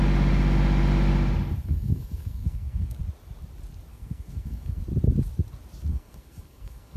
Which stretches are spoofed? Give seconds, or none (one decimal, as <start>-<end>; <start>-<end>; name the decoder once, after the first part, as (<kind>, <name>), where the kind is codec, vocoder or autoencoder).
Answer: 1.6-3.0 (codec, SNAC); 3.9-4.8; 5.9-7.0